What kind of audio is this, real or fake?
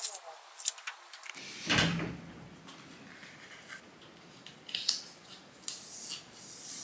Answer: real